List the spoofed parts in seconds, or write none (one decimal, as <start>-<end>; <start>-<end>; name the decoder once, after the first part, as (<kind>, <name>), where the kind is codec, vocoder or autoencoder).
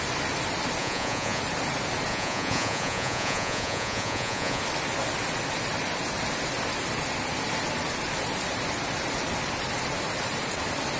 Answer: 0.8-1.4 (vocoder, Vocos); 2.1-4.6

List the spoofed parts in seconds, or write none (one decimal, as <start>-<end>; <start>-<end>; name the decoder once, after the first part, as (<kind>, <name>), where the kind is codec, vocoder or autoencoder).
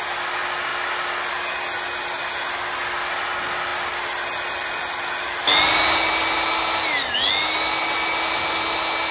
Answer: none